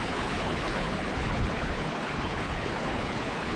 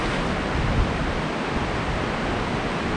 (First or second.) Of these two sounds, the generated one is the first